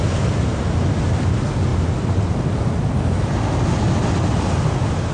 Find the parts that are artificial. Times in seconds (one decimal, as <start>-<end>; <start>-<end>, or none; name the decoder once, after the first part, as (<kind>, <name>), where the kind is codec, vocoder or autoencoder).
none

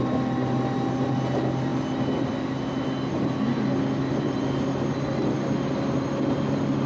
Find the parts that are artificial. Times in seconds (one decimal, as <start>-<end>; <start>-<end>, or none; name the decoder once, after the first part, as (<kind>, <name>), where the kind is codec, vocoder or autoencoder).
none

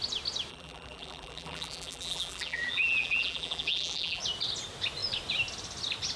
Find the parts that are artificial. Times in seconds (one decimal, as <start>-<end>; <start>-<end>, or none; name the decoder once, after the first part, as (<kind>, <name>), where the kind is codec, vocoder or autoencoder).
0.5-4.2 (vocoder, BigVGAN v2)

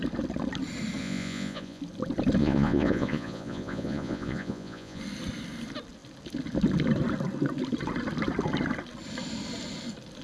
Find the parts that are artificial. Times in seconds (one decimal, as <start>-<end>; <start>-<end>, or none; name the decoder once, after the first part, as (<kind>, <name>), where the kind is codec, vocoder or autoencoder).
1.0-1.8 (vocoder, Vocos); 2.4-5.0

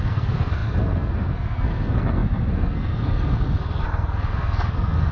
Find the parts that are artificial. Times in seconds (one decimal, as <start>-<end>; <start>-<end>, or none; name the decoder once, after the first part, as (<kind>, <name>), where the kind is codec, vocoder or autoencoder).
0.0-5.1 (codec, SNAC)

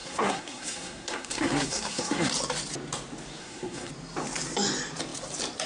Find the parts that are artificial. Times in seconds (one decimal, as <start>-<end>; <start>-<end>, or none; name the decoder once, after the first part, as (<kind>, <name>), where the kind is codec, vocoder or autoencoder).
0.0-2.3 (codec, SNAC); 3.4-3.9

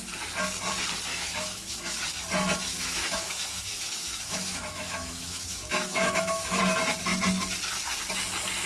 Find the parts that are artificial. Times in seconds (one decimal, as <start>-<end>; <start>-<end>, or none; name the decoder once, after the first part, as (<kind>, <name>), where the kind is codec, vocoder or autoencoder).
1.1-2.0 (autoencoder, DAC-VAE); 2.7-6.6